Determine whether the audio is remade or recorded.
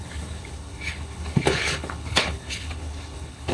remade